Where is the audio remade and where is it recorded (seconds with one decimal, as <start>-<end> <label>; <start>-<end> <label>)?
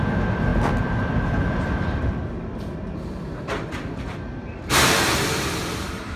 0.0-0.5 remade; 0.5-1.5 recorded; 1.5-2.0 remade; 2.0-5.7 recorded; 5.7-6.2 remade